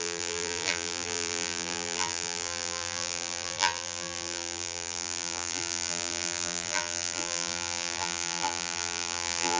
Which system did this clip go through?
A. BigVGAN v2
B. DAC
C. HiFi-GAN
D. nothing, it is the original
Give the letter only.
A